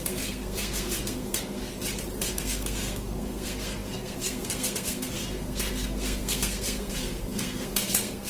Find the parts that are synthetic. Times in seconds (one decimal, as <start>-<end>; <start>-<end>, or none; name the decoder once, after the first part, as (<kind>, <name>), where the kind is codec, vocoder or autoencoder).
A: 0.0-1.7 (codec, SNAC); 2.3-8.3